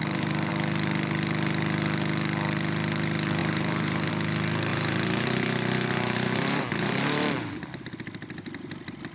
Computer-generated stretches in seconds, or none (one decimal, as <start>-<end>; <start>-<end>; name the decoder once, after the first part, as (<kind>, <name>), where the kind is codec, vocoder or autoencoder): 0.0-0.5 (vocoder, BigVGAN v2); 3.4-4.1; 4.7-7.6